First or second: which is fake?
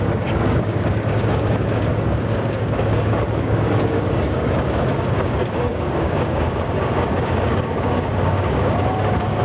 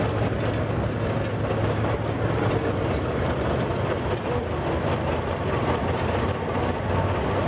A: first